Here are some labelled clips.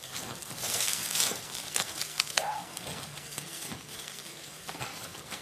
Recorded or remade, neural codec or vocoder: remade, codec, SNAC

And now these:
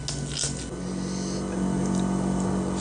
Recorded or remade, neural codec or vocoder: recorded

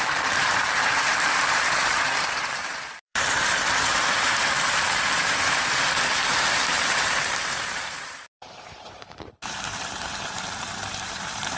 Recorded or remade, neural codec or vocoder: remade, vocoder, BigVGAN v2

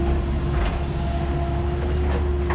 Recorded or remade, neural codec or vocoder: recorded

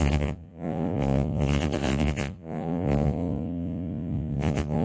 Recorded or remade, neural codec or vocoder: remade, vocoder, Vocos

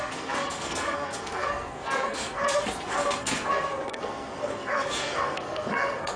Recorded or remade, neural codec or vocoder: remade, codec, SNAC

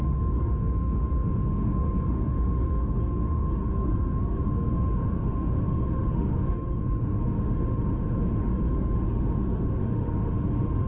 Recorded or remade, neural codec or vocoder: remade, autoencoder, DAC-VAE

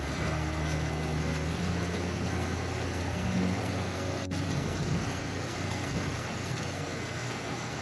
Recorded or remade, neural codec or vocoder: remade, codec, SNAC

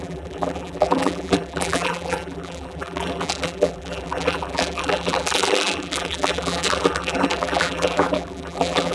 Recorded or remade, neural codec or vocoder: remade, vocoder, BigVGAN v2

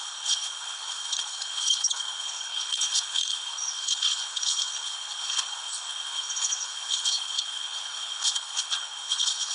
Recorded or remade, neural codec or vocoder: remade, codec, HILCodec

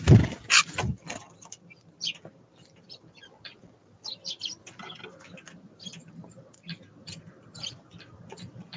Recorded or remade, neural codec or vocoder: recorded